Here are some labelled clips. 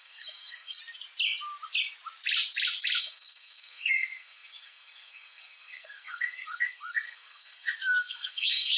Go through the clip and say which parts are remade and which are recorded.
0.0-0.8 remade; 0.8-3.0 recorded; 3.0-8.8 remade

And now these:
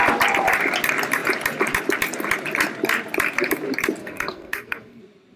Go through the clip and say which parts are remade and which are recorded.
0.0-4.0 recorded; 4.0-5.0 remade; 5.0-5.4 recorded

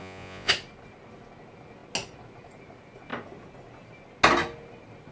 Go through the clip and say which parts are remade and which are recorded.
0.0-0.5 remade; 0.5-5.1 recorded

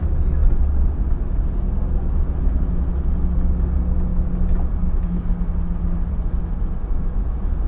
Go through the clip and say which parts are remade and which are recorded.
0.0-0.4 recorded; 0.4-1.0 remade; 1.0-7.7 recorded

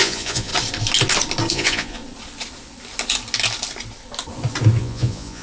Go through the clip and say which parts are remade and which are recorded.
0.0-0.5 remade; 0.5-1.5 recorded; 1.5-2.0 remade; 2.0-4.8 recorded; 4.8-5.4 remade